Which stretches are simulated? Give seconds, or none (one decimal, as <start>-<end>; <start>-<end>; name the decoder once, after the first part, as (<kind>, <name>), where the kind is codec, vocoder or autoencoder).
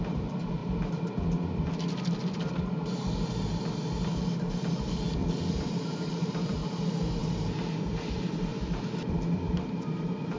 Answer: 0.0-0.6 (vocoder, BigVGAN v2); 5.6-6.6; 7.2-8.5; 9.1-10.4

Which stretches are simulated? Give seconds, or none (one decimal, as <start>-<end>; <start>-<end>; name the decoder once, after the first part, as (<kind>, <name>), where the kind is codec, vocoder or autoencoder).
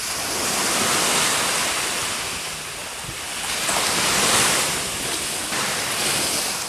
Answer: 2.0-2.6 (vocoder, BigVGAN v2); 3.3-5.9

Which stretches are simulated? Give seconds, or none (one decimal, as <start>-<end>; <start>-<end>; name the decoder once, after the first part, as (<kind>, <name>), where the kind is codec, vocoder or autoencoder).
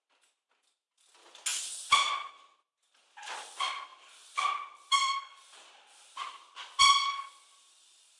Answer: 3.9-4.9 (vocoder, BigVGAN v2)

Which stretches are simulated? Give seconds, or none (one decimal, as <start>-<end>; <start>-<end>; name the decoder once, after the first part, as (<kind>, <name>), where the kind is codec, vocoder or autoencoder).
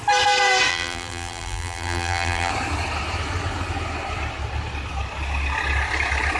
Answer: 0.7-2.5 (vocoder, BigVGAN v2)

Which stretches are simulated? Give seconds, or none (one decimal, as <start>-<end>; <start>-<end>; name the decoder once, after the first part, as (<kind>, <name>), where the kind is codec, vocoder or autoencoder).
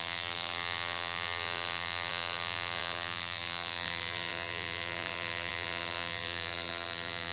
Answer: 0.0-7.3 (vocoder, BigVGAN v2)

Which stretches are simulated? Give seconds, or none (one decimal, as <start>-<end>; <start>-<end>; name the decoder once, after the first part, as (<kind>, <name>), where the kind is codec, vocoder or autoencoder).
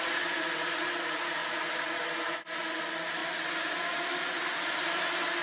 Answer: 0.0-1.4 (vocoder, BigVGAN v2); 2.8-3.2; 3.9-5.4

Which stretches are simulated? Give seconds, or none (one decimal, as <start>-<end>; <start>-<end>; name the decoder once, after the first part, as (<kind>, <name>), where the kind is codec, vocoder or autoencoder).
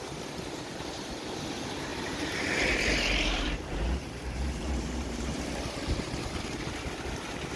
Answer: 1.9-6.2 (vocoder, BigVGAN v2)